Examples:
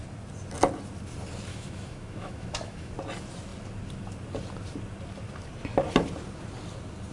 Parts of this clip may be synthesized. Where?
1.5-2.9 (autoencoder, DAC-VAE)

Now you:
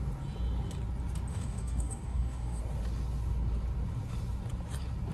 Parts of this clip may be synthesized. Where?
1.3-2.6 (codec, DAC)

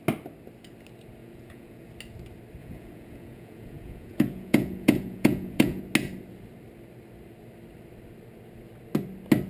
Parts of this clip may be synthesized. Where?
1.2-1.9 (vocoder, Vocos); 2.6-5.8

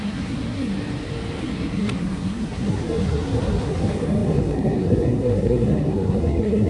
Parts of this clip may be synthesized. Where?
0.0-0.7 (codec, SNAC); 1.4-6.7

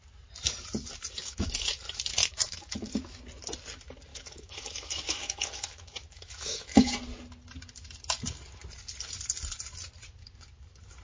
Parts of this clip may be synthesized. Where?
1.2-1.8 (autoencoder, DAC-VAE); 2.2-3.2; 4.1-6.9

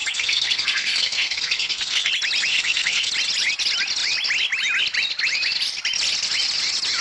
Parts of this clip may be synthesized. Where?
0.0-2.1 (codec, SNAC); 2.5-3.1

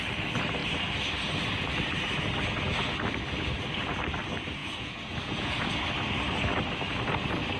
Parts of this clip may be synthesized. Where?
4.6-5.7 (vocoder, Vocos)

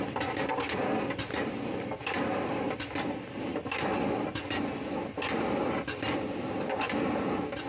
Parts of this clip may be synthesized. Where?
2.0-2.5 (vocoder, BigVGAN v2)